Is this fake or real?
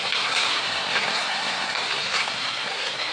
fake